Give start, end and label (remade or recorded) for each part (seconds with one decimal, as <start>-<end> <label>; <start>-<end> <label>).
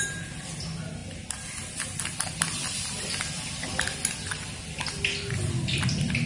0.0-6.3 recorded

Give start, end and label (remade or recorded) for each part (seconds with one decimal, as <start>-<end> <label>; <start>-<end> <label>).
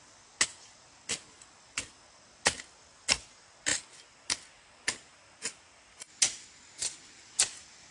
0.0-7.9 recorded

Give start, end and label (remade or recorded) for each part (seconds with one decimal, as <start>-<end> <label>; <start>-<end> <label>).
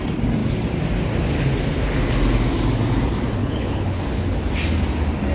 0.0-3.4 recorded; 3.4-4.0 remade; 4.0-5.3 recorded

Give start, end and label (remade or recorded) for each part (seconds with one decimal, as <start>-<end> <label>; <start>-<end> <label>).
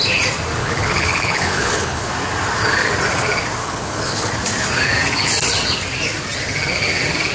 0.0-0.6 recorded; 0.6-2.1 remade; 2.1-3.6 recorded; 3.6-4.3 remade; 4.3-7.3 recorded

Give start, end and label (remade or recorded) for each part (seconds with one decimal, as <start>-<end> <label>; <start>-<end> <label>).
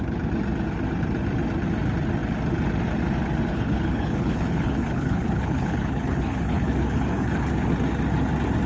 0.0-3.5 recorded; 3.5-7.5 remade; 7.5-8.7 recorded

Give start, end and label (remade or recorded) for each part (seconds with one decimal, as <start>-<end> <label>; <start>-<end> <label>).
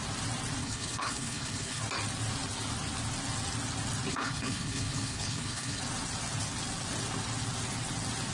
0.0-0.6 recorded; 0.6-1.8 remade; 1.8-4.1 recorded; 4.1-5.8 remade; 5.8-8.3 recorded